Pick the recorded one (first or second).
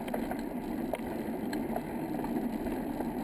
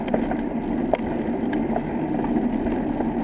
second